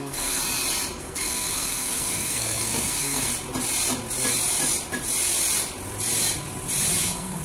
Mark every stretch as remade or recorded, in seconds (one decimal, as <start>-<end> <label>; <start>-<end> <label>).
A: 0.0-0.4 remade; 0.4-1.0 recorded; 1.0-3.3 remade; 3.3-7.0 recorded; 7.0-7.4 remade